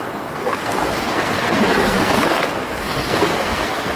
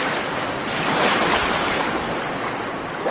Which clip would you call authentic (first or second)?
second